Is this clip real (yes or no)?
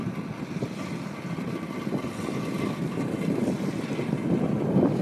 yes